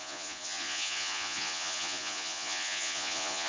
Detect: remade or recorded remade